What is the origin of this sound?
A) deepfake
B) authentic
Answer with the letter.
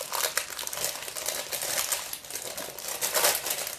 B